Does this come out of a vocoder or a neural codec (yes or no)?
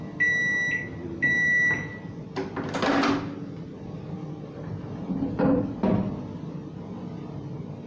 no